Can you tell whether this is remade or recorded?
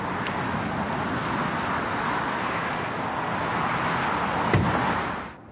recorded